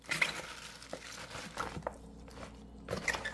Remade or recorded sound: recorded